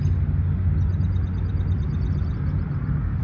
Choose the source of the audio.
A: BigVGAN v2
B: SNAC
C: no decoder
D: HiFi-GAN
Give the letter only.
C